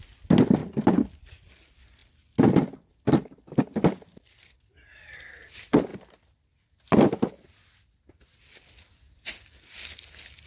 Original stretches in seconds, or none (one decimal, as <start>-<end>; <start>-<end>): 0.0-0.6; 1.3-5.9; 7.1-10.5

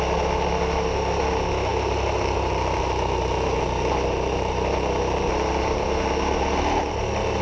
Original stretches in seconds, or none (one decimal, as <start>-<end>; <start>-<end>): 0.0-7.4

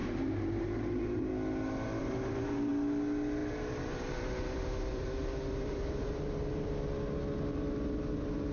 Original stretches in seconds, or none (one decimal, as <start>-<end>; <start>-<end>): 1.3-2.0; 2.7-3.4; 6.7-8.5